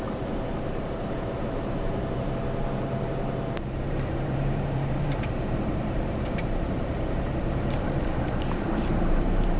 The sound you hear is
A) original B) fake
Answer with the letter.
B